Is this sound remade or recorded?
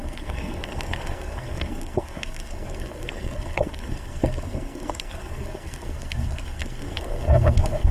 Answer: remade